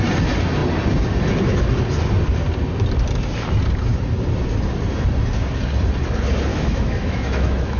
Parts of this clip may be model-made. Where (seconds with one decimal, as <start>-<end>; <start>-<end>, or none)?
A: 6.5-7.8